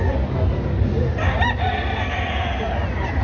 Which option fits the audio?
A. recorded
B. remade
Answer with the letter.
A